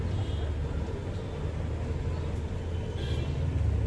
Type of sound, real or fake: real